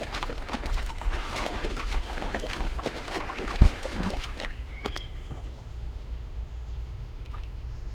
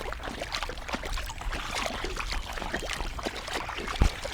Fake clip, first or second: first